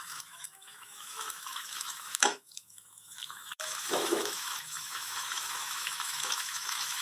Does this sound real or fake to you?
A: fake